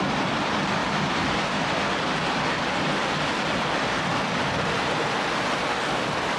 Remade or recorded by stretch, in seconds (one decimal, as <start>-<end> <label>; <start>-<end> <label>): 0.0-0.8 recorded; 0.8-4.0 remade; 4.0-6.4 recorded